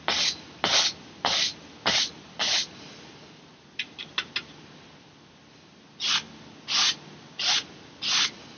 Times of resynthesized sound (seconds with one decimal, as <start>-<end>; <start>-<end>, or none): none

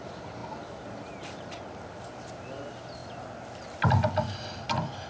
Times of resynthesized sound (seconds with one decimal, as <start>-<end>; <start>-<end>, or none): none